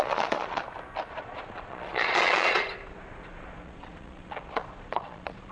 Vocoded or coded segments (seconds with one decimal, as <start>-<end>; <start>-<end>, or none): 0.0-0.6; 1.1-5.5